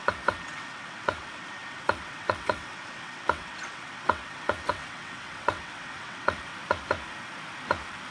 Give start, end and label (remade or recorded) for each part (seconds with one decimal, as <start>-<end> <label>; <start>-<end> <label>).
0.0-6.5 remade; 6.5-8.1 recorded